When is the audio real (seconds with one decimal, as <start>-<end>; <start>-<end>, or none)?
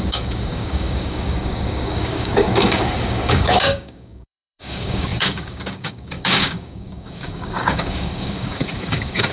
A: none